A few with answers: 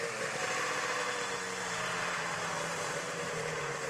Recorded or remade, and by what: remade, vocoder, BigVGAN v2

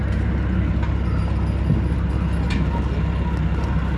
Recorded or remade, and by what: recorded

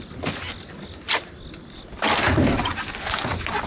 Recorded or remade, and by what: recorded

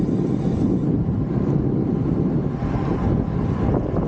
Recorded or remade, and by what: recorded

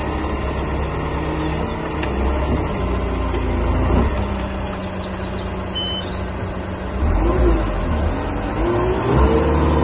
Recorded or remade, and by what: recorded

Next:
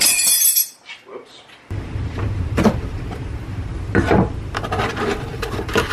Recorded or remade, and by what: remade, vocoder, BigVGAN v2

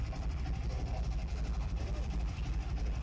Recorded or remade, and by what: remade, vocoder, BigVGAN v2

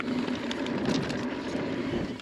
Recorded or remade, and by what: remade, vocoder, BigVGAN v2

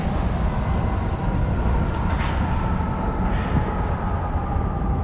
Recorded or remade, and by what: recorded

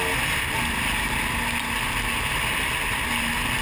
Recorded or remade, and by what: recorded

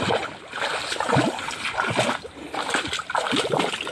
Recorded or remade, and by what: recorded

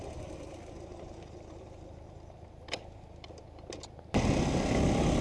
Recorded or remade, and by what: recorded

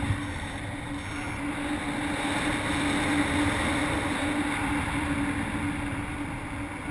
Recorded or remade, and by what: recorded